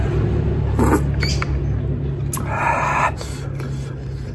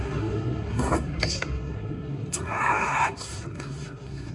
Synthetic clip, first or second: second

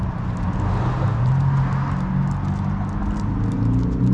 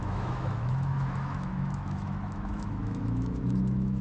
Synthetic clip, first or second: second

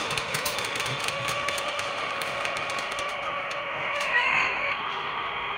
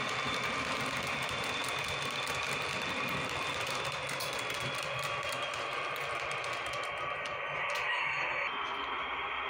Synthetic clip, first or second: first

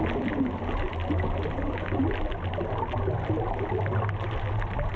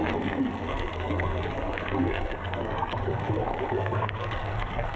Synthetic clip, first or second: second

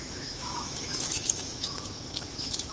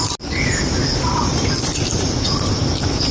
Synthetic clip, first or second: first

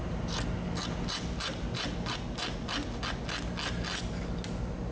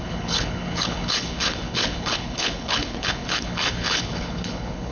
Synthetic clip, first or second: second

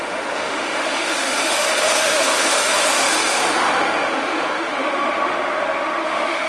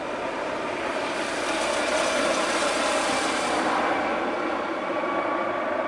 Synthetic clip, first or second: first